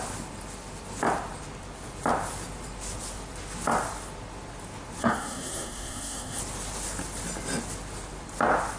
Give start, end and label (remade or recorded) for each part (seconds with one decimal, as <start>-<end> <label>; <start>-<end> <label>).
0.0-5.0 recorded; 5.0-6.4 remade; 6.4-8.8 recorded